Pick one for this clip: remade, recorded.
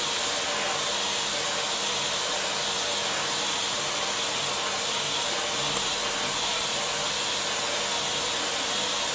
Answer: recorded